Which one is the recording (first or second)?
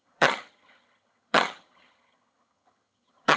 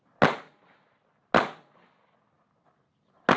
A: second